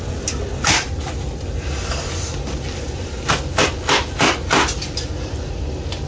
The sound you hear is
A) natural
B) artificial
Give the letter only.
A